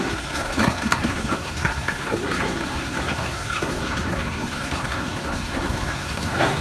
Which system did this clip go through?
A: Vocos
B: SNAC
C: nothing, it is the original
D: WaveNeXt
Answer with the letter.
B